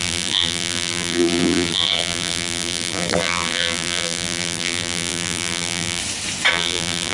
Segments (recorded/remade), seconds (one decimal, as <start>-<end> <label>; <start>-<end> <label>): 0.0-6.0 remade; 6.0-6.5 recorded; 6.5-7.1 remade